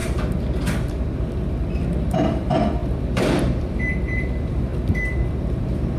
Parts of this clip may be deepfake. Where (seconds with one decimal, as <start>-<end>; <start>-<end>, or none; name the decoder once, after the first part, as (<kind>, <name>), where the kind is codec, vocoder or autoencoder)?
0.0-6.0 (vocoder, BigVGAN v2)